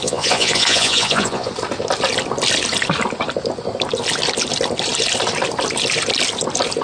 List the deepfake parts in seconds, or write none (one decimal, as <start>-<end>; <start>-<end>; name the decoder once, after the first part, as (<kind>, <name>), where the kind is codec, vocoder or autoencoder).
0.0-1.5 (vocoder, Vocos)